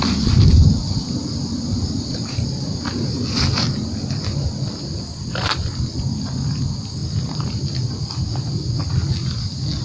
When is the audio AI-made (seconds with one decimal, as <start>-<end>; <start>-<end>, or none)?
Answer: none